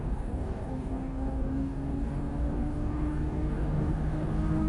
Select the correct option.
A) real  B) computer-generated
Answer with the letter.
B